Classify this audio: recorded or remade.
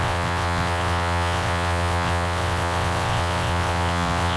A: remade